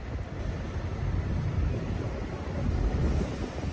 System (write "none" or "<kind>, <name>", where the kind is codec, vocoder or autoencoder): none